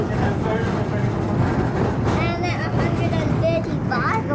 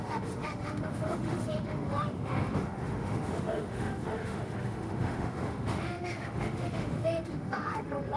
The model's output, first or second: second